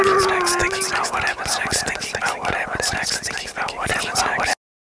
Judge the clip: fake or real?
real